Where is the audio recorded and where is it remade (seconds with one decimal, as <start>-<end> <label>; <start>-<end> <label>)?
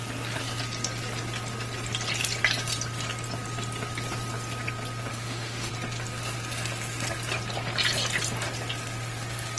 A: 0.0-5.1 recorded; 5.1-5.7 remade; 5.7-9.6 recorded